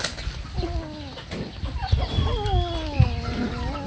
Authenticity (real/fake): real